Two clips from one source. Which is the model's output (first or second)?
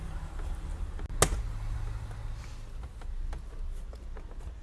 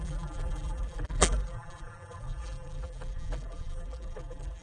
second